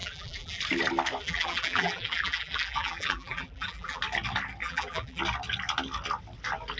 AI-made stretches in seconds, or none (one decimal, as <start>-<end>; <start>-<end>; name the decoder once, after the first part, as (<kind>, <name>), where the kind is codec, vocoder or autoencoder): 0.0-0.6 (vocoder, BigVGAN v2); 1.2-4.0; 4.6-5.2